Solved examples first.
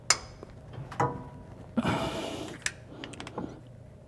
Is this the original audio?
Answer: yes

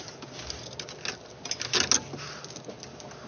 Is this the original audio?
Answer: yes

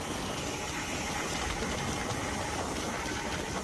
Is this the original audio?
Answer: yes